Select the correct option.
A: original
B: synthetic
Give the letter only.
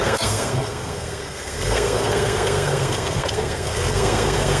B